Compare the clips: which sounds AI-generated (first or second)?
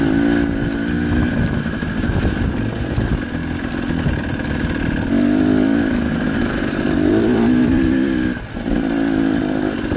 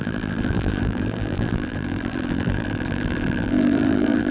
second